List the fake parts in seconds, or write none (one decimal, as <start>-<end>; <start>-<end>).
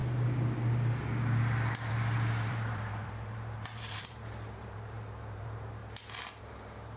1.9-5.8; 6.4-7.0